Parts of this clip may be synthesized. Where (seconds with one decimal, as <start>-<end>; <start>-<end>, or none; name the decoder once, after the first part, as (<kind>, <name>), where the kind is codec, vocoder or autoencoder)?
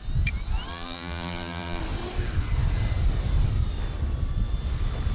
0.7-1.8 (vocoder, BigVGAN v2)